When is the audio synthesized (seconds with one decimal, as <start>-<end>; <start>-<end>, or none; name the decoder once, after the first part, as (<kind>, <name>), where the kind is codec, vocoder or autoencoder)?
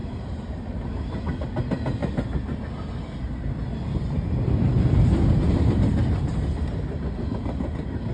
none